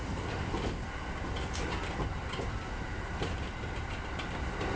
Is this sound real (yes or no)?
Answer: yes